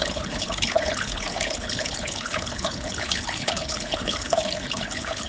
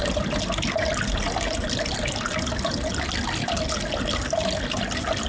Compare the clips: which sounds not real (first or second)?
first